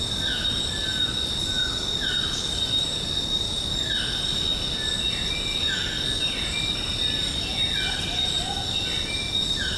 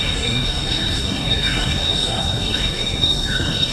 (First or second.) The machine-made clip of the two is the second